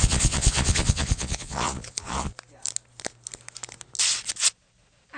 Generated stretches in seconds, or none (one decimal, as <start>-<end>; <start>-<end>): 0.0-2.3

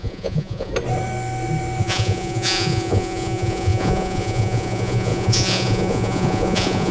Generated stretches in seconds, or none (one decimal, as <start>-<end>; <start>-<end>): 0.0-0.7; 1.8-6.9

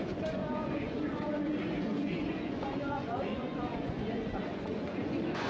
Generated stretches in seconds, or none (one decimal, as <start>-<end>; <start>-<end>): 0.0-5.5

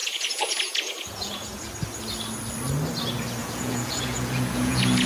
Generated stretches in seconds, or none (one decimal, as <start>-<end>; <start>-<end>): 0.0-1.7; 3.4-5.1